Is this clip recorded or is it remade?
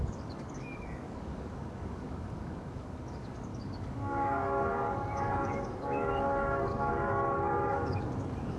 remade